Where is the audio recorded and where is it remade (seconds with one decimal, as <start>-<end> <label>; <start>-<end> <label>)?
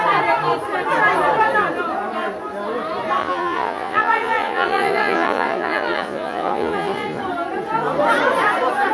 0.0-3.2 recorded; 3.2-7.2 remade; 7.2-8.9 recorded